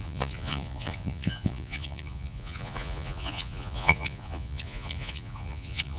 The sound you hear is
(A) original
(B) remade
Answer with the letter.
B